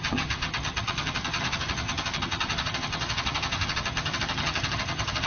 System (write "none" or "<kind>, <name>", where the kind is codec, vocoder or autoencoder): vocoder, HiFi-GAN